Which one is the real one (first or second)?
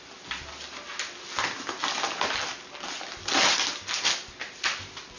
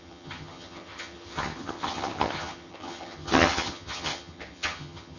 first